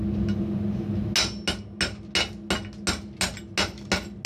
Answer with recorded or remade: recorded